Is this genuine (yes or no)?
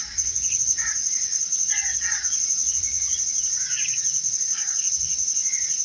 no